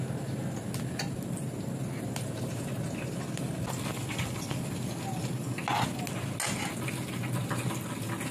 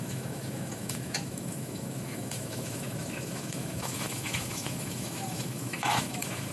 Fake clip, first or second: second